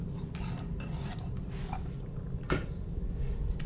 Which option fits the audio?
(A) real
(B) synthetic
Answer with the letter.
A